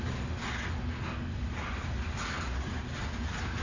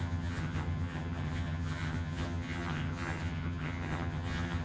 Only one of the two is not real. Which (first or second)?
second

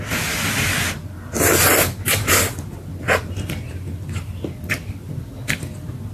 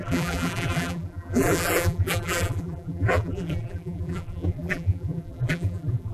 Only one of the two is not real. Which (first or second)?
second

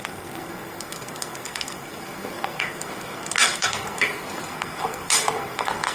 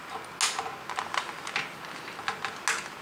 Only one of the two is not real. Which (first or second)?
first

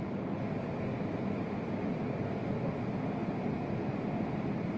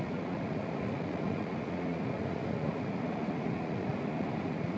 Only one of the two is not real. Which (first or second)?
second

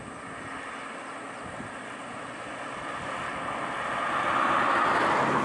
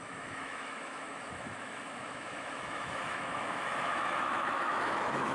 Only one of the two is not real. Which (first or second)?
second